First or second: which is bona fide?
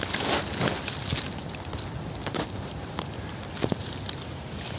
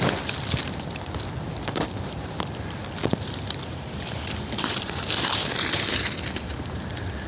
first